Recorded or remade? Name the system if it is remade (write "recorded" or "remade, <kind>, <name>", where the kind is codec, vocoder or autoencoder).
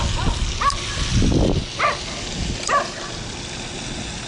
recorded